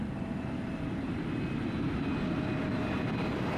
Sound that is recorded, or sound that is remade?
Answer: recorded